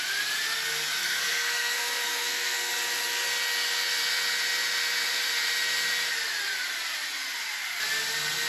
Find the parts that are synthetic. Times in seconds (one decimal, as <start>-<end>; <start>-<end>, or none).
1.0-2.7